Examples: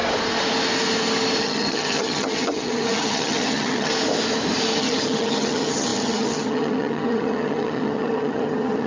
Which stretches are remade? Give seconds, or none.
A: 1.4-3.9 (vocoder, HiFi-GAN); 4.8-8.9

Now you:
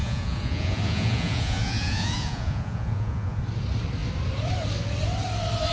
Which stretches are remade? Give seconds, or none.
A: 0.0-3.4 (vocoder, Vocos)

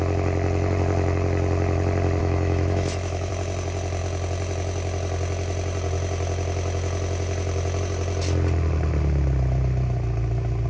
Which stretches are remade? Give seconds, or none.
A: 2.2-3.3 (autoencoder, DAC-VAE)

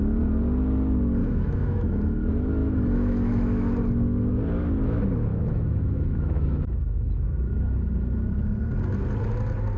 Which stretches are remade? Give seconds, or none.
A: 1.2-2.0 (autoencoder, DAC-VAE); 2.6-3.7; 5.3-7.6

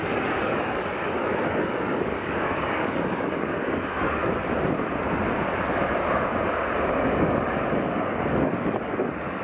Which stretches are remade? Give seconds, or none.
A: 0.0-4.2 (codec, DAC); 7.8-9.4

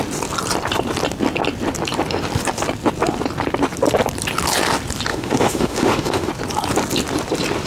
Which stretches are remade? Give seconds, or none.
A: 5.1-6.3 (autoencoder, DAC-VAE)